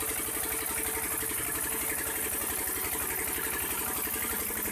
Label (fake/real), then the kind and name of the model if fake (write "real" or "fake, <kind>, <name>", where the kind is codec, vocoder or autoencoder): real